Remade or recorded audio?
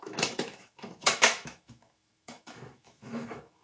remade